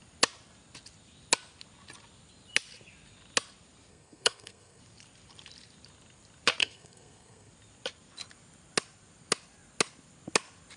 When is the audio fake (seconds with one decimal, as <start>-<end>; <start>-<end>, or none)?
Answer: 3.9-4.8; 6.6-7.5